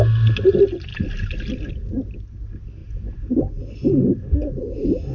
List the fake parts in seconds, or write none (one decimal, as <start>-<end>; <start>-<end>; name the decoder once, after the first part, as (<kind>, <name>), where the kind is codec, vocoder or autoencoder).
none